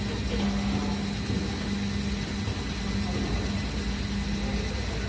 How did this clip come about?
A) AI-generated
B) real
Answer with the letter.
B